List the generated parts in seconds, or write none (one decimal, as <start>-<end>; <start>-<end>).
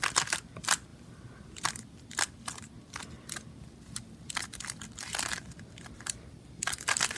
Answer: none